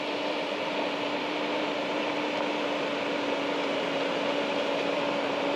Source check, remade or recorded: remade